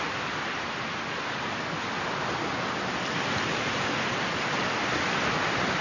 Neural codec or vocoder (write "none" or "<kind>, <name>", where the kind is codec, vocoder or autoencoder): none